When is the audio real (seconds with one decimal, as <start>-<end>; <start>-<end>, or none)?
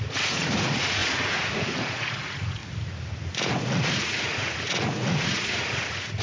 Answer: 2.6-3.6